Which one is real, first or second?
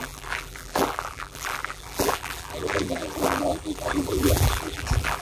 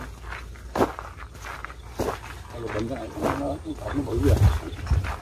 second